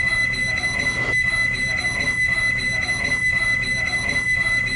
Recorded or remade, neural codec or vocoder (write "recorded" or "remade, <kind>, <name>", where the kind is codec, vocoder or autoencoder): remade, autoencoder, DAC-VAE